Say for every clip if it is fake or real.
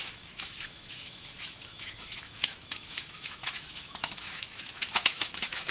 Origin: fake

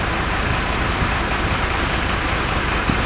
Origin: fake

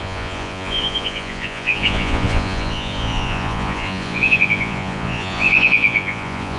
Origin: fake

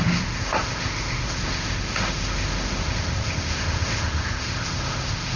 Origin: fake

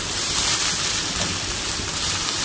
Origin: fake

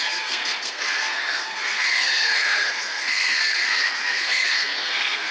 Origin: fake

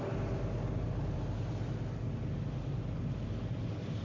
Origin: real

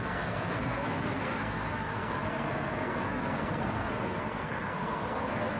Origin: fake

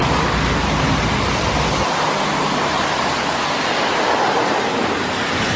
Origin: real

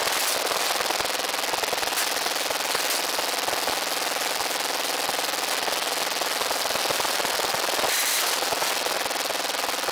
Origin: real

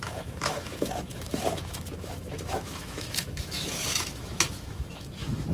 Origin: fake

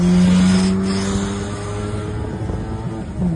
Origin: real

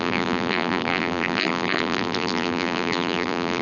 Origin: fake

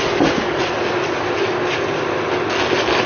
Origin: real